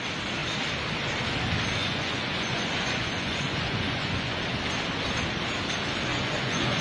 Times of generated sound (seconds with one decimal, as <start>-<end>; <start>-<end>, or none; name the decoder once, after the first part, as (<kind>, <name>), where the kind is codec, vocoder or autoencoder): 1.8-4.4 (vocoder, Vocos); 6.1-6.8